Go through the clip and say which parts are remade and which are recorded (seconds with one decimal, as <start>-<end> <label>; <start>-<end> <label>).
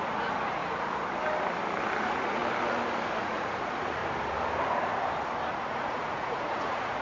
0.0-0.6 remade; 0.6-2.0 recorded; 2.0-2.4 remade; 2.4-3.2 recorded; 3.2-4.0 remade; 4.0-5.5 recorded; 5.5-7.0 remade